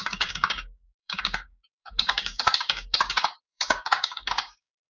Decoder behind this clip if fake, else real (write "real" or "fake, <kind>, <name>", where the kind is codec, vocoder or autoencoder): fake, codec, DAC